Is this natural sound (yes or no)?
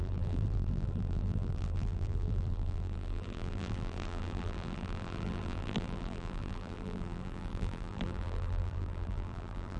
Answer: no